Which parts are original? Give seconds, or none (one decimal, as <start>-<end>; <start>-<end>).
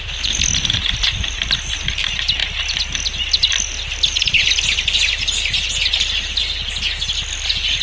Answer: 0.0-7.8